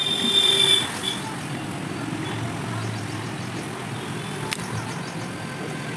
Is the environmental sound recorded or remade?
recorded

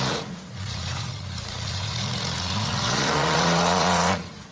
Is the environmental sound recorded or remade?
remade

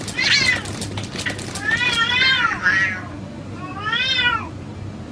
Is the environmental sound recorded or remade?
recorded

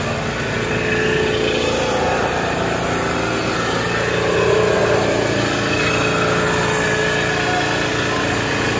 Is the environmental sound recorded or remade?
recorded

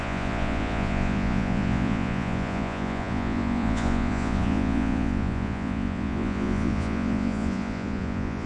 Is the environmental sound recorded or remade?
remade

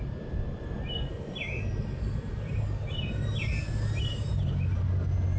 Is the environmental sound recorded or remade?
recorded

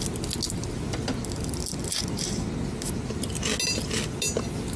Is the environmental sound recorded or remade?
recorded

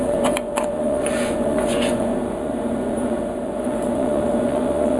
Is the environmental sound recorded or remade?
remade